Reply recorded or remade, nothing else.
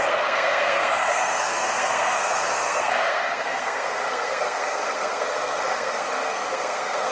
remade